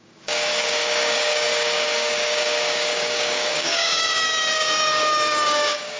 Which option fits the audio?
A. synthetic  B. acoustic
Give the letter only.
A